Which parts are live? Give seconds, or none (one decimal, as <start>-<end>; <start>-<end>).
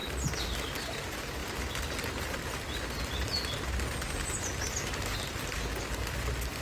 0.0-6.6